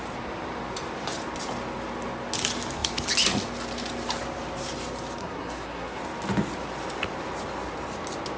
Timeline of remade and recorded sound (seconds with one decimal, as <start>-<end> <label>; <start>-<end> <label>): 0.0-5.2 recorded; 5.2-6.0 remade; 6.0-8.4 recorded